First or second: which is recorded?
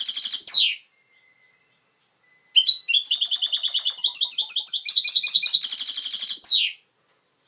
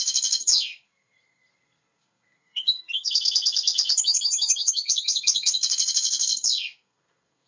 first